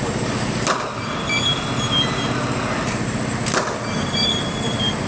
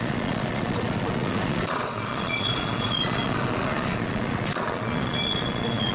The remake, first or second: second